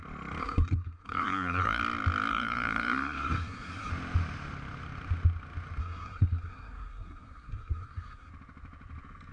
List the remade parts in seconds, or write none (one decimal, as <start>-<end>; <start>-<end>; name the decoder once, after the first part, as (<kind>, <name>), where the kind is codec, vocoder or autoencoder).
0.4-1.8 (codec, SNAC); 2.3-3.9; 5.8-8.3